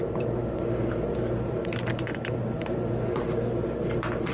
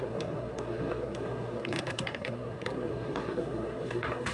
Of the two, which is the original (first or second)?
first